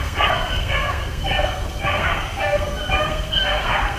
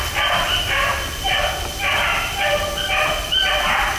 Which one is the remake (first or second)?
first